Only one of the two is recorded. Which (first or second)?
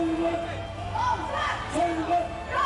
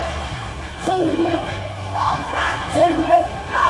first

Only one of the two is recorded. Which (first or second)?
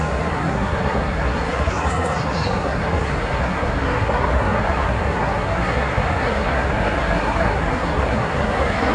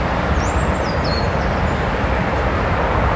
second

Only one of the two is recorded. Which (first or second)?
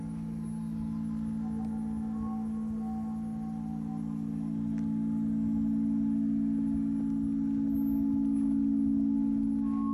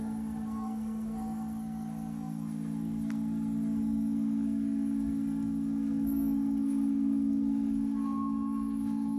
first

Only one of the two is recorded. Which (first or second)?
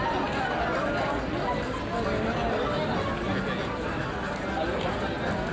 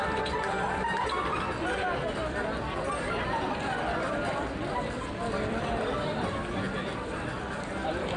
first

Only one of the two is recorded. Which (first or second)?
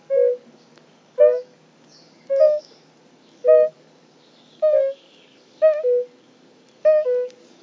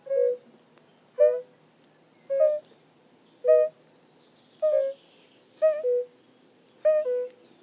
second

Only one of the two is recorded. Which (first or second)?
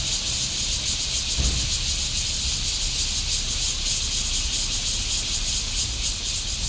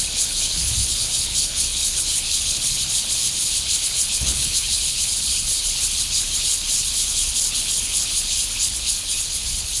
first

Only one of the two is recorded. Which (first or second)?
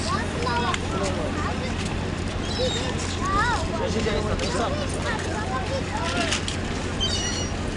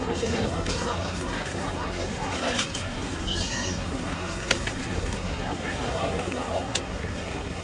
first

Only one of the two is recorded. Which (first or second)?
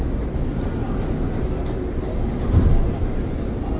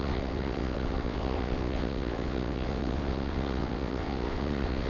first